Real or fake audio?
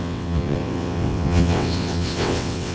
fake